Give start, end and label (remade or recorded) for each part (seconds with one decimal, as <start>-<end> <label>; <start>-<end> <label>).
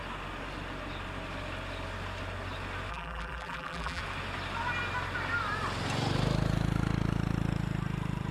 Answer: 0.0-2.9 recorded; 2.9-4.0 remade; 4.0-8.3 recorded